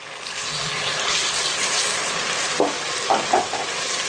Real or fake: real